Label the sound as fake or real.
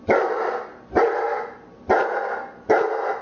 real